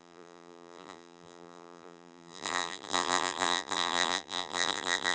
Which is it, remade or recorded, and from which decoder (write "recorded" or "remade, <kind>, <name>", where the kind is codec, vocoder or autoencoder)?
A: remade, vocoder, BigVGAN v2